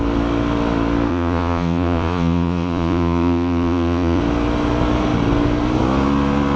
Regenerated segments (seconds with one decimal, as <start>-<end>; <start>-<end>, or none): 1.1-4.2